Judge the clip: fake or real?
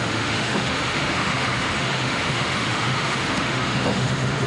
fake